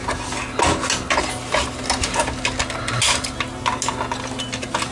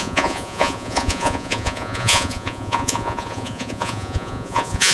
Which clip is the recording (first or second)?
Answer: first